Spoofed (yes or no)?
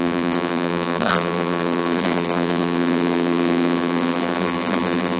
yes